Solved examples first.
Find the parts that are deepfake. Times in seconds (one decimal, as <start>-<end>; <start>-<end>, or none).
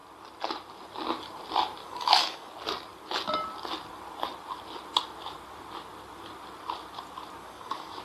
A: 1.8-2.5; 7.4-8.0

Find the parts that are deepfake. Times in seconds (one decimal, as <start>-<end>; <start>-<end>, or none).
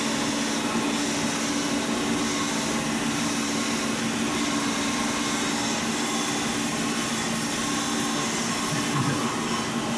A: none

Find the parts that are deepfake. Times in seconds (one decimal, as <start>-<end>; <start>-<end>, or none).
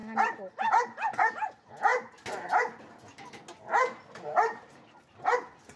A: none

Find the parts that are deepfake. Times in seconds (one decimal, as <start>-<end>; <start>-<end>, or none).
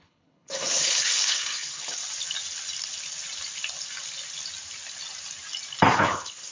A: 0.0-2.0; 5.9-6.5